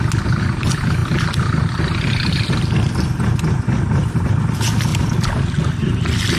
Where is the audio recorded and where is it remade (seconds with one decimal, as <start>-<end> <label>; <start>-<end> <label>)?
0.0-6.4 recorded